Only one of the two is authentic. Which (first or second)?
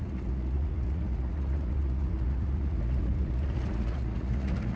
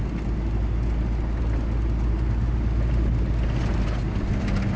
second